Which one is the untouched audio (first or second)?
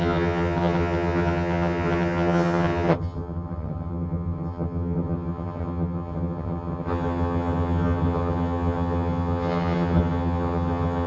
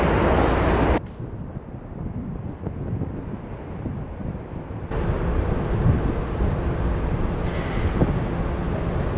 second